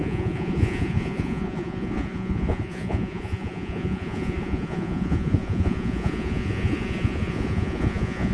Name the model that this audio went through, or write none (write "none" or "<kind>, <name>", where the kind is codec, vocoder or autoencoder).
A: vocoder, Vocos